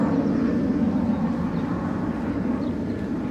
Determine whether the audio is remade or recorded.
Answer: recorded